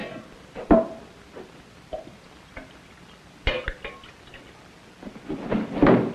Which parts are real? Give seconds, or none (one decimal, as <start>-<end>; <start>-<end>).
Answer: 3.5-6.1